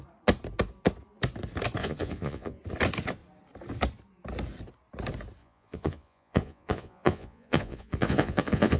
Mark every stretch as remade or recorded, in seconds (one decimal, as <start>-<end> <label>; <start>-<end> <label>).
0.0-1.8 recorded; 1.8-2.6 remade; 2.6-5.4 recorded; 5.4-8.8 remade